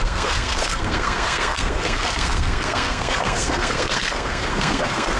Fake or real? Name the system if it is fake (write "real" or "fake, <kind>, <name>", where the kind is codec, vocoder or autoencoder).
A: fake, codec, SNAC